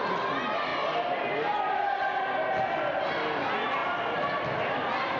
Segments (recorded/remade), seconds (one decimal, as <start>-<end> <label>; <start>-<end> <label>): 0.0-5.2 recorded